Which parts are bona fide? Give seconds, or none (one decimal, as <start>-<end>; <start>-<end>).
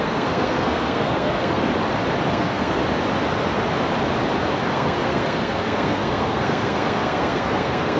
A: 1.7-2.3; 2.8-4.7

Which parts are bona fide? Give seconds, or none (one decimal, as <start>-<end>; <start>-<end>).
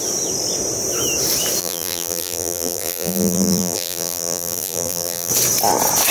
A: 0.0-1.6; 5.3-6.1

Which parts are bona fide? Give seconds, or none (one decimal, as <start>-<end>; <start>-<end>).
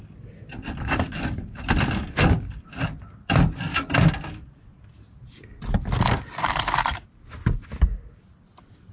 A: 0.0-8.9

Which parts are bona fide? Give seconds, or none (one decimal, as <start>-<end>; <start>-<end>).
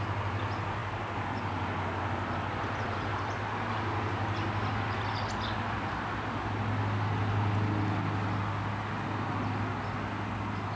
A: 0.0-10.8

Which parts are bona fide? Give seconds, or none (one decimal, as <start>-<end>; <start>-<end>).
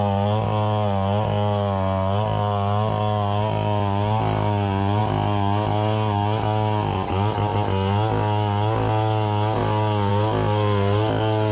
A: 0.0-11.5